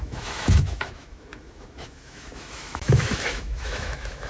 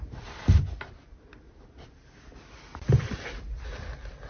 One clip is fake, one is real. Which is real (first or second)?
second